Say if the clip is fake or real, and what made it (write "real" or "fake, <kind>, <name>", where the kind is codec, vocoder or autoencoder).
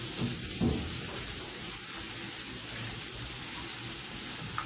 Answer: real